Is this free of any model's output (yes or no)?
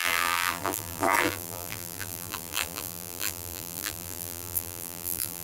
no